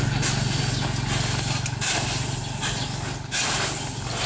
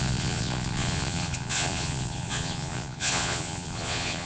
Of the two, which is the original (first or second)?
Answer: first